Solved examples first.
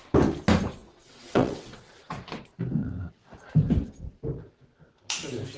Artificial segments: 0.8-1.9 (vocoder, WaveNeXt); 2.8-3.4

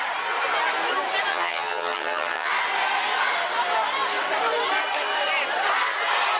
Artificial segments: 1.3-2.5 (vocoder, HiFi-GAN)

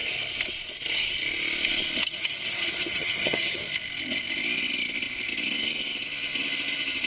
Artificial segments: 2.0-3.6 (vocoder, HiFi-GAN)